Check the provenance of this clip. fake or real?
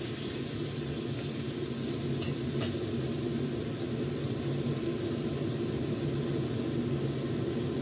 real